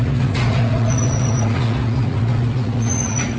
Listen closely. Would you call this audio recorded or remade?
remade